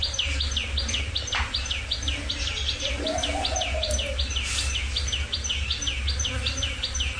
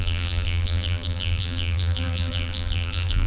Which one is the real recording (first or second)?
first